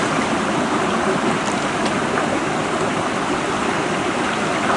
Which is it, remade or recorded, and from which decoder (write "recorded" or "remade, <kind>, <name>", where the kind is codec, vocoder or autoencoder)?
recorded